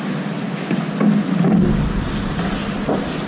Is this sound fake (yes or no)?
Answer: no